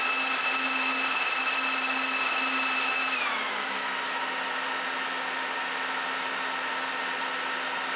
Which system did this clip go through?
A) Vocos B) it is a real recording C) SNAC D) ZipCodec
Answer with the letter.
B